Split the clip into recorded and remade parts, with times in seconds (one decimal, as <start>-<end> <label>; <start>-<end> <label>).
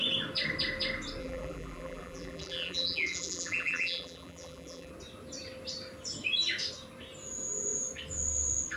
0.0-1.2 recorded; 1.2-4.9 remade; 4.9-8.8 recorded